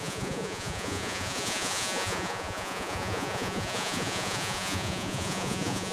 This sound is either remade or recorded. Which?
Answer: remade